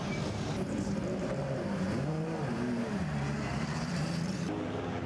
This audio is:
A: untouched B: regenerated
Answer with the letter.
B